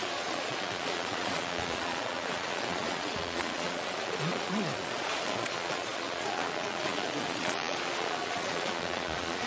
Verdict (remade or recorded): remade